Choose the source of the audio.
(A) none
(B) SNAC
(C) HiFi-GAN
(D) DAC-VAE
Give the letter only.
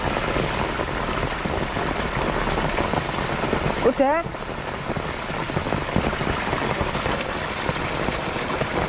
A